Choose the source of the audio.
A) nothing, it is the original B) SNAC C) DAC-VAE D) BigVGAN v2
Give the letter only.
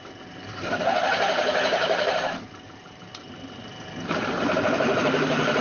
D